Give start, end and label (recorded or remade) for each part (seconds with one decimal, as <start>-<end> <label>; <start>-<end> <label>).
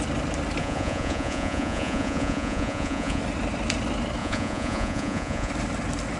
0.0-0.6 recorded; 0.6-3.2 remade; 3.2-4.2 recorded; 4.2-5.5 remade; 5.5-6.2 recorded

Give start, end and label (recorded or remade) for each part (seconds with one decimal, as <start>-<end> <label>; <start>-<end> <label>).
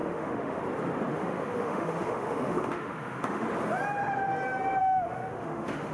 0.0-0.6 remade; 0.6-1.1 recorded; 1.1-3.4 remade; 3.4-4.8 recorded; 4.8-5.9 remade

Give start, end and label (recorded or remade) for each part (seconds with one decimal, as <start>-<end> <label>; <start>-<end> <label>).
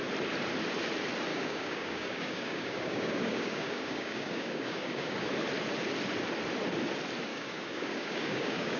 0.0-1.3 recorded; 1.3-5.3 remade; 5.3-7.3 recorded; 7.3-8.8 remade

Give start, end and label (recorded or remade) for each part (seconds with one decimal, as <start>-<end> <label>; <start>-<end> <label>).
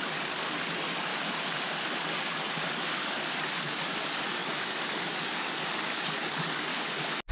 0.0-1.1 remade; 1.1-2.6 recorded; 2.6-6.7 remade; 6.7-7.3 recorded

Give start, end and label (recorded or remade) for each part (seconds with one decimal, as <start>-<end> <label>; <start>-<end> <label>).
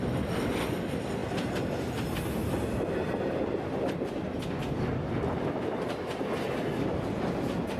0.0-7.8 recorded